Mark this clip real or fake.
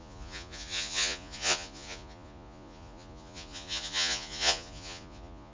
fake